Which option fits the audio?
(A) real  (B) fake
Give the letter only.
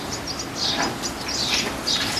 A